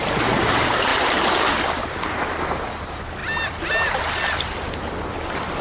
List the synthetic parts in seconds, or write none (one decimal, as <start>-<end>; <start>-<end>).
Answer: none